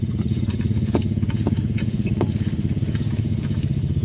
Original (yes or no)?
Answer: no